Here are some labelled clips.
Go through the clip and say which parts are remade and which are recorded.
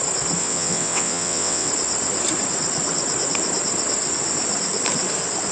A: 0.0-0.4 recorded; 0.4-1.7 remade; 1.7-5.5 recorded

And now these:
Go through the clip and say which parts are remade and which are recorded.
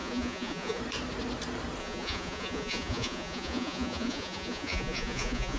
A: 0.0-0.8 remade; 0.8-1.8 recorded; 1.8-5.6 remade